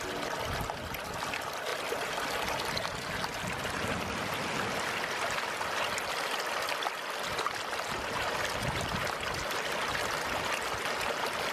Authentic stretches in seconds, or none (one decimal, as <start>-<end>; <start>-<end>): 0.0-11.5

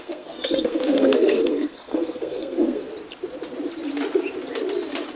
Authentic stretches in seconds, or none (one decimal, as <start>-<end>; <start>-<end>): 2.9-5.2

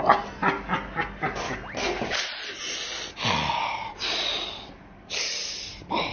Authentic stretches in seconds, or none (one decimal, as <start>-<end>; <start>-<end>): 0.0-6.1

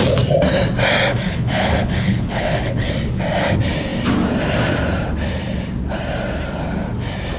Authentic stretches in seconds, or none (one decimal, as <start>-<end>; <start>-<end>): 0.0-1.1; 2.9-7.4

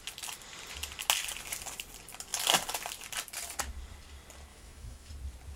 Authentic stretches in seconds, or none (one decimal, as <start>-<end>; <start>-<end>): 0.0-4.5; 5.1-5.6

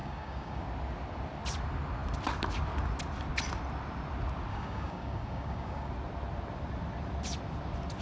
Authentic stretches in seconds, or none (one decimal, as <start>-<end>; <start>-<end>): 0.6-4.5; 5.9-8.0

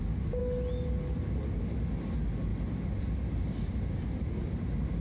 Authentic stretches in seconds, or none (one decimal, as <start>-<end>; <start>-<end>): 0.0-2.5

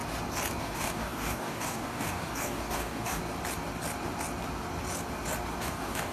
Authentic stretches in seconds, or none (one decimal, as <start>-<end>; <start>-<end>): 0.0-0.6; 3.2-5.6